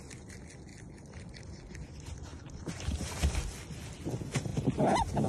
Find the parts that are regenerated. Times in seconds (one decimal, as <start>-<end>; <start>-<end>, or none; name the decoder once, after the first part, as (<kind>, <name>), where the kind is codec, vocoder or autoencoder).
0.7-1.7 (vocoder, BigVGAN v2); 2.3-4.1; 4.5-5.3